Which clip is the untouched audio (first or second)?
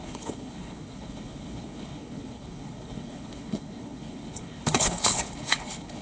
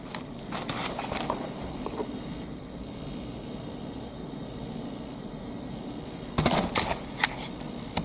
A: second